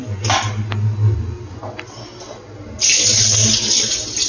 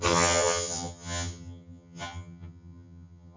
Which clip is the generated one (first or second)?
second